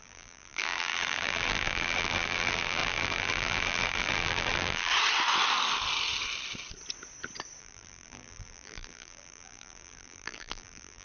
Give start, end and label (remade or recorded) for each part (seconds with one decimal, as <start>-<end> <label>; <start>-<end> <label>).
0.0-4.9 remade; 4.9-7.6 recorded; 7.6-11.0 remade

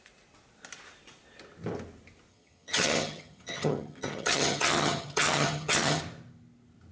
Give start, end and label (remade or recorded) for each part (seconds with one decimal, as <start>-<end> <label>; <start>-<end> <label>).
0.0-2.3 recorded; 2.3-6.0 remade; 6.0-6.9 recorded